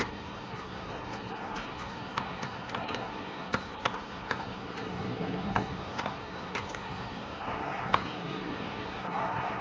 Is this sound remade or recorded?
remade